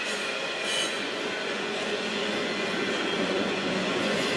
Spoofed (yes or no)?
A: yes